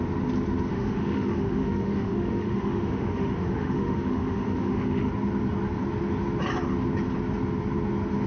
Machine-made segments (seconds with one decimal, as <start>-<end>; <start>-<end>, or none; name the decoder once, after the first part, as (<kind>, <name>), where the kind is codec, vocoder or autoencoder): 0.7-5.1 (autoencoder, DAC-VAE)